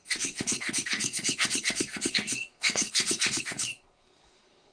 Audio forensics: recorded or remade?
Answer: remade